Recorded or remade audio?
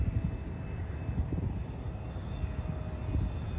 recorded